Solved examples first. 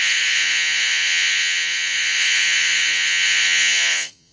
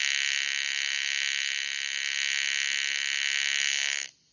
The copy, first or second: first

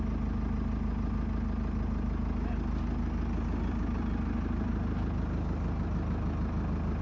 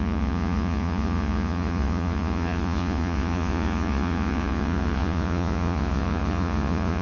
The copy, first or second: second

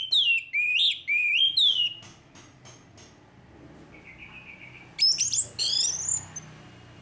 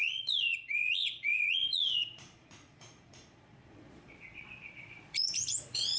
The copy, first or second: second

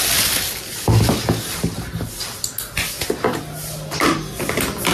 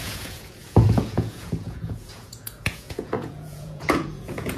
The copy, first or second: second